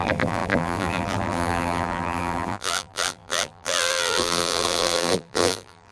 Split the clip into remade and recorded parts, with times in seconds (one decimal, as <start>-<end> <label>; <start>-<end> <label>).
0.0-5.9 remade